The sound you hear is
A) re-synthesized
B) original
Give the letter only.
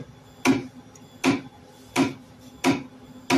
B